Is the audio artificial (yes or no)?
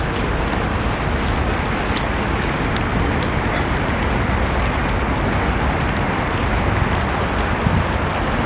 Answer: no